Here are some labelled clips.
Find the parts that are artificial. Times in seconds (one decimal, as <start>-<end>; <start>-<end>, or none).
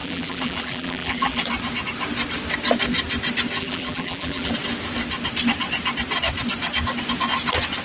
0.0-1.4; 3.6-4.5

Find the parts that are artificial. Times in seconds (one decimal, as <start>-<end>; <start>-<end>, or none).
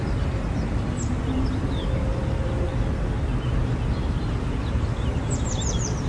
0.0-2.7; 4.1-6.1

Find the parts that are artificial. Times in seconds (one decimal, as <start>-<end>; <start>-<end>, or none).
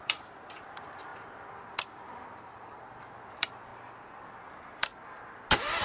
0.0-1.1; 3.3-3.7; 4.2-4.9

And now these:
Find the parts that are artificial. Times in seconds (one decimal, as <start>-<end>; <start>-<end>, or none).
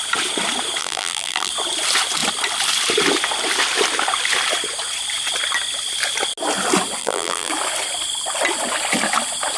0.8-1.5; 7.0-7.5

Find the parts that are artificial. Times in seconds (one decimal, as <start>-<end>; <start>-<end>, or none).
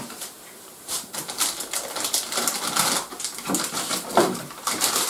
0.0-1.2; 3.7-5.1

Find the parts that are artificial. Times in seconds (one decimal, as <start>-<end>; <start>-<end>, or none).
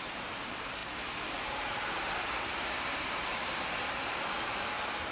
0.0-5.1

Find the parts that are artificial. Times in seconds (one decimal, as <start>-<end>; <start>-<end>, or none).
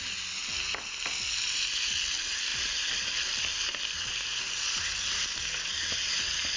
none